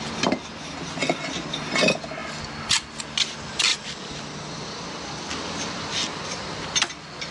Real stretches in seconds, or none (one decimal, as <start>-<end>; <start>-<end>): 0.0-7.3